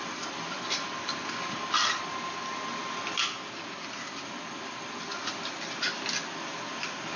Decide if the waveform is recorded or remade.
recorded